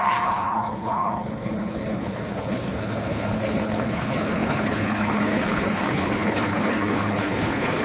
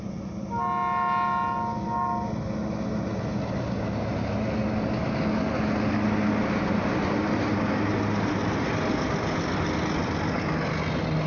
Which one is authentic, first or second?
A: second